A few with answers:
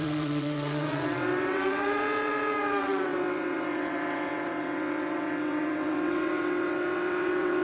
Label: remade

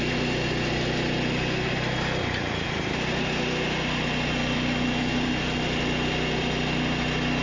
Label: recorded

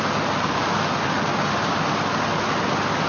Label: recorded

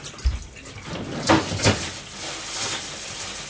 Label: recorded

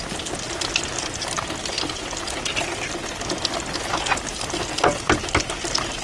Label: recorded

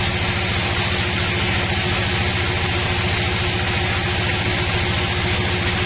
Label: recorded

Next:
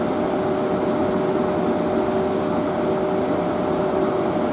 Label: recorded